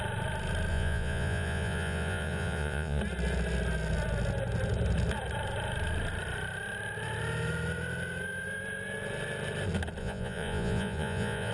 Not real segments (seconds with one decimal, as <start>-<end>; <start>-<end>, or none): 0.7-3.0; 10.0-11.5